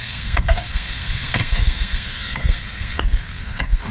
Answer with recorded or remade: remade